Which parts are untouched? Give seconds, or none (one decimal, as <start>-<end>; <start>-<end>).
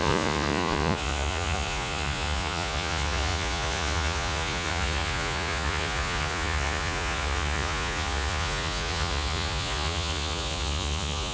none